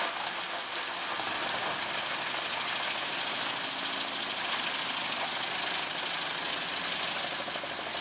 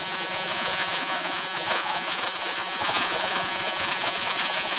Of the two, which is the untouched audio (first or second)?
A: first